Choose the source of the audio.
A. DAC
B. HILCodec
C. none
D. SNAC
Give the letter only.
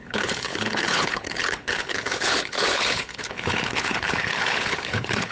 B